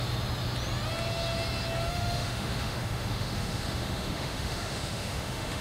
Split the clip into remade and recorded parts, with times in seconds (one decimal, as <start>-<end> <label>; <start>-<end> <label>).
0.0-1.9 recorded; 1.9-5.6 remade